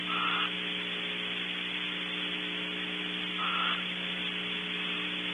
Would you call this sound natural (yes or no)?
yes